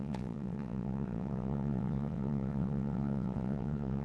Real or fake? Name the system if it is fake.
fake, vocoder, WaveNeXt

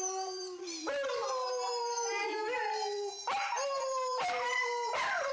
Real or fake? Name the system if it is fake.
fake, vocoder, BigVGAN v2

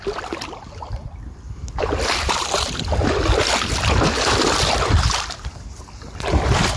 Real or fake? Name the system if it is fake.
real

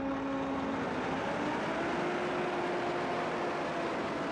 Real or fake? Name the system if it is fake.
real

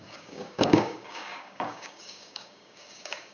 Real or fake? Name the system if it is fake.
fake, codec, DAC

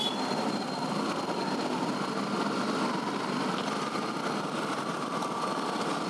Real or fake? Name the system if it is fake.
real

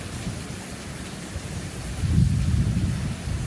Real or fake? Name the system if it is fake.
real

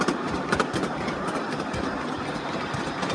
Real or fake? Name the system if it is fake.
real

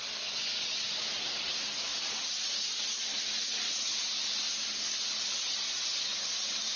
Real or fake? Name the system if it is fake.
real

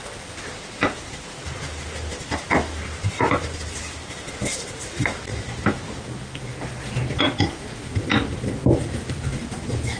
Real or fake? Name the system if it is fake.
real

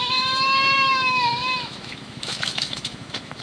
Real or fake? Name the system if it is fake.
fake, autoencoder, DAC-VAE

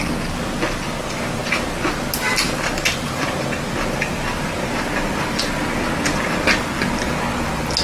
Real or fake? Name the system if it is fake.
real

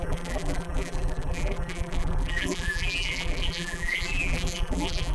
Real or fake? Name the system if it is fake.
fake, vocoder, BigVGAN v2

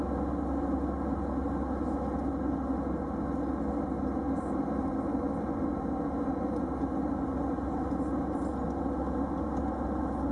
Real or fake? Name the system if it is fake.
real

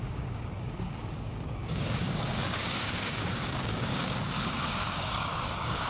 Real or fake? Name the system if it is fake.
fake, codec, DAC